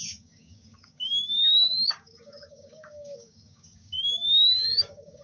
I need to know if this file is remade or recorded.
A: remade